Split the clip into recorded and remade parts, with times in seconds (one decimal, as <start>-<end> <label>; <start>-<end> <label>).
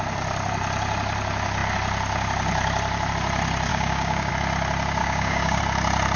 0.0-3.7 recorded; 3.7-4.3 remade; 4.3-5.0 recorded; 5.0-5.6 remade; 5.6-6.2 recorded